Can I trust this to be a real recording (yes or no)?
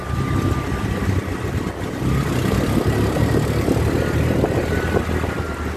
yes